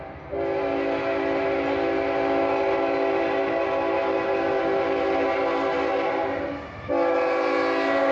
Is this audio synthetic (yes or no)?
no